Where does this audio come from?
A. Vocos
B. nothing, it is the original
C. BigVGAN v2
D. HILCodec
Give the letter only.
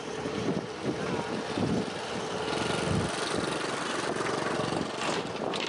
B